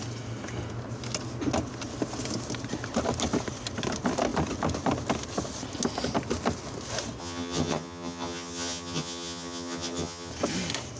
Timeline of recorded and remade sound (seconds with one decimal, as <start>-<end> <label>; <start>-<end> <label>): 0.0-7.2 recorded; 7.2-10.3 remade; 10.3-11.0 recorded